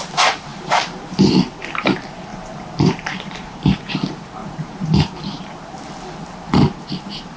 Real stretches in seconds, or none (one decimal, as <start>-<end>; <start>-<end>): 0.0-2.3; 3.9-4.4; 5.4-7.4